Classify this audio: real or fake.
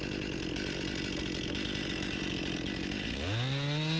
real